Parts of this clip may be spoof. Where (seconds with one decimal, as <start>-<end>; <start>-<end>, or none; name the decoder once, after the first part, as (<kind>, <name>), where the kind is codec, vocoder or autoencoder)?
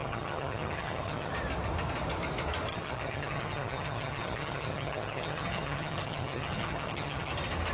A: 0.0-1.3 (vocoder, HiFi-GAN); 2.7-7.3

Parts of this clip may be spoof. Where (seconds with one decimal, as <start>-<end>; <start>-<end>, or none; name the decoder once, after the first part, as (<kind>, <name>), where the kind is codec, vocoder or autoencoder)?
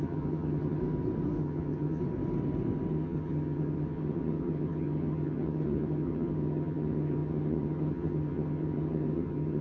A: 0.0-0.8 (vocoder, HiFi-GAN); 1.4-2.0; 2.9-9.6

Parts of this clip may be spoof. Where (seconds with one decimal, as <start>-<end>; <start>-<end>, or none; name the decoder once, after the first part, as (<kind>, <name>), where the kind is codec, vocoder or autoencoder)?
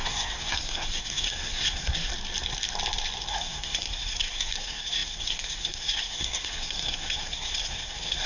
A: 0.0-2.1 (codec, SNAC); 3.3-8.3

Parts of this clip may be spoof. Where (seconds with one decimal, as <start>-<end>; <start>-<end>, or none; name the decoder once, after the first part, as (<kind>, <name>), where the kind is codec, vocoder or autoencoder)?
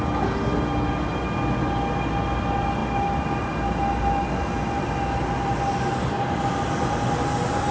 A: none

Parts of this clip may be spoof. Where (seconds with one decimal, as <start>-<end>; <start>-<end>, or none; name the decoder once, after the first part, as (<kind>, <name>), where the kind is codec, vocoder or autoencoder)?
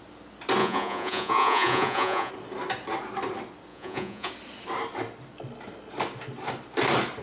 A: 0.6-2.3 (vocoder, Vocos); 3.7-4.3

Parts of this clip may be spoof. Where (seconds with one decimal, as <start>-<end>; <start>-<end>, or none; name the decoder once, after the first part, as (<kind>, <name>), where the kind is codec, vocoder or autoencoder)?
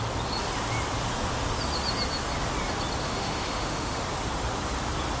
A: 3.0-4.0 (autoencoder, DAC-VAE)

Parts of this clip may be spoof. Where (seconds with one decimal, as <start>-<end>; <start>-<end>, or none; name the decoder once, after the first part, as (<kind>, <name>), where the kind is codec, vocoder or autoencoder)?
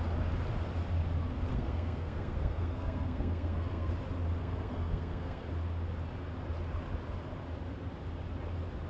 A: 1.5-3.9 (codec, SNAC); 4.4-5.5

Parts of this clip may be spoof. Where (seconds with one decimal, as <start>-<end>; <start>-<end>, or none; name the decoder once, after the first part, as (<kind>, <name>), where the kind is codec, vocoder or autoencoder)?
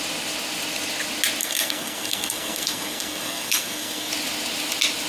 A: 1.4-4.1 (codec, SNAC)